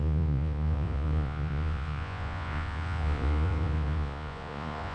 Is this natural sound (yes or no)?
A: no